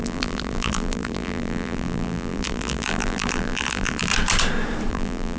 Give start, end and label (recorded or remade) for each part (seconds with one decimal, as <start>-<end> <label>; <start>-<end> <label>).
0.0-4.1 remade; 4.1-4.9 recorded; 4.9-5.4 remade